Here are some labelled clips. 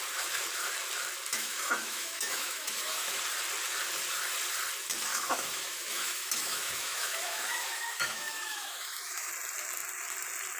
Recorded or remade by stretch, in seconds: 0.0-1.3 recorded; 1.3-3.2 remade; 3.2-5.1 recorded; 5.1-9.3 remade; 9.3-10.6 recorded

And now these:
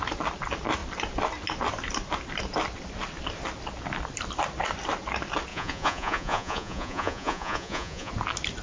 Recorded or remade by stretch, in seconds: 0.0-5.5 recorded; 5.5-8.1 remade; 8.1-8.6 recorded

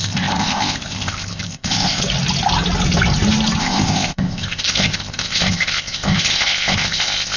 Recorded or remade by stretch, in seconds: 0.0-2.0 remade; 2.0-3.6 recorded; 3.6-7.4 remade